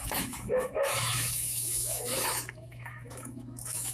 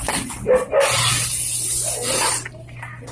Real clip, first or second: second